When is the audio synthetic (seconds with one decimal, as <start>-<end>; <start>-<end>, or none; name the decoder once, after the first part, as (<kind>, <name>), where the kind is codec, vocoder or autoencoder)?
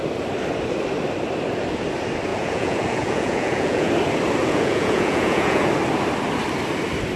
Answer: 2.3-3.9 (vocoder, Vocos); 4.4-5.7